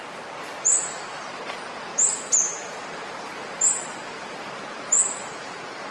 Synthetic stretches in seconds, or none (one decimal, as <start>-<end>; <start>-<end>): 0.0-1.4; 1.9-5.4